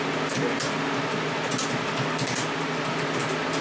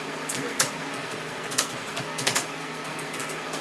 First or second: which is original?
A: first